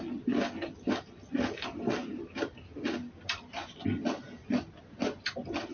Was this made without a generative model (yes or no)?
yes